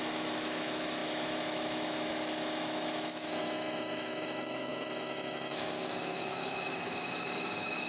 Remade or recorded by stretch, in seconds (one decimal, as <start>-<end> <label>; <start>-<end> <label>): 0.0-7.9 remade